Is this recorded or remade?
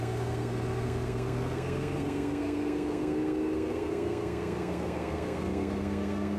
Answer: remade